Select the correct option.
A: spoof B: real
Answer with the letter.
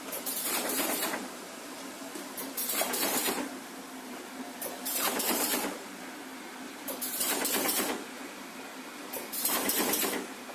A